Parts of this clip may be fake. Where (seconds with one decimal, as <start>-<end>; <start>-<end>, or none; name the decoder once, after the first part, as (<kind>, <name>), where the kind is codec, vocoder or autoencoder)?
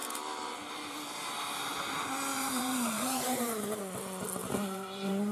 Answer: 2.3-3.8 (vocoder, BigVGAN v2); 4.4-5.3